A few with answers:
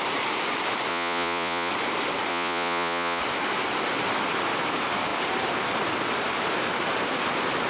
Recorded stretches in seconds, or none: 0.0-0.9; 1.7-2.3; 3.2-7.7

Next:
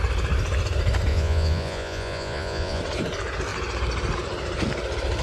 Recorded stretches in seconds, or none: 0.0-1.1; 2.8-5.2

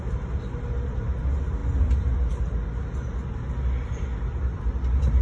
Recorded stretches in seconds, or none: 0.0-5.2

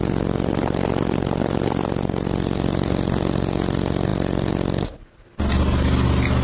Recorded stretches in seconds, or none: 0.0-6.4

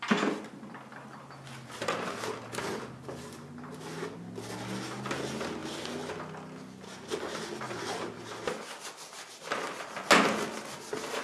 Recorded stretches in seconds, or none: 0.0-11.2

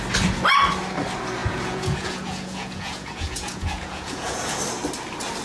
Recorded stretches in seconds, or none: 0.0-1.4; 4.6-5.4

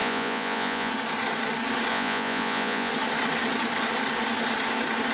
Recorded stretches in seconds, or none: 0.9-1.9; 2.9-5.1

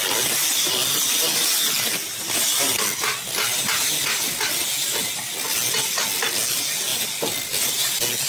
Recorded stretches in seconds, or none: 0.0-8.3